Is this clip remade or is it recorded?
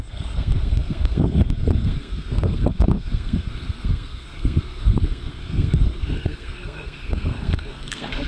remade